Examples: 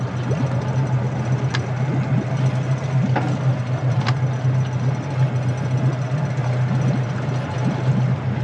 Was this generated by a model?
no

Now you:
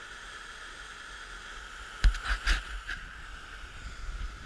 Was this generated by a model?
no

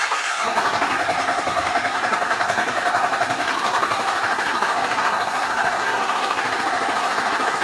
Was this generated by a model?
yes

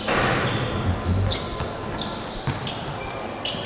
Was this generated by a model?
no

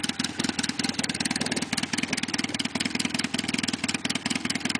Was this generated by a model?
no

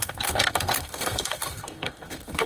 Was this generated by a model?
yes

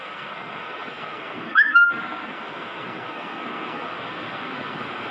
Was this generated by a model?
yes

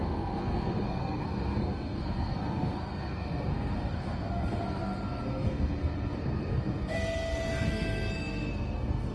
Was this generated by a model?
yes